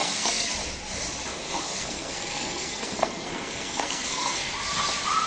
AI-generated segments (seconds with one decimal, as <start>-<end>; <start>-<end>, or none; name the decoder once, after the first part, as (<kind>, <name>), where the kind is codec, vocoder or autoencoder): 0.0-0.5 (codec, SNAC); 1.3-4.5